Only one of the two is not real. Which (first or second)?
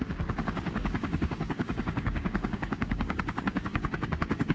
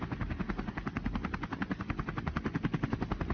first